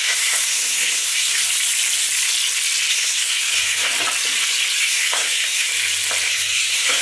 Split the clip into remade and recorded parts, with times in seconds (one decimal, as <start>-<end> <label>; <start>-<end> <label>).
0.0-1.4 remade; 1.4-2.9 recorded; 2.9-3.9 remade; 3.9-4.8 recorded; 4.8-5.7 remade; 5.7-6.3 recorded; 6.3-7.0 remade